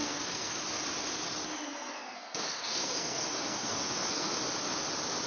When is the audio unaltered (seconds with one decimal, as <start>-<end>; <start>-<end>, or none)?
0.6-1.7; 4.3-5.3